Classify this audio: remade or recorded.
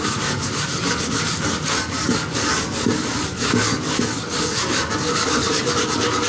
remade